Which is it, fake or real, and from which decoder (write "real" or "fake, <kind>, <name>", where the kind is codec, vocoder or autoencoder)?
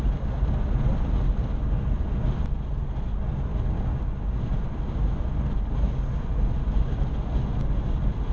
real